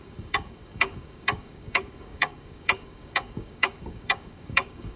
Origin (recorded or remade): remade